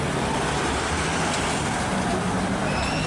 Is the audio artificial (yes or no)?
no